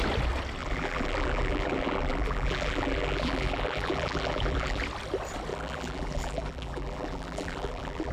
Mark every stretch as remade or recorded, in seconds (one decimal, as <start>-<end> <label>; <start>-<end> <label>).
0.0-0.6 recorded; 0.6-4.8 remade; 4.8-5.5 recorded; 5.5-8.1 remade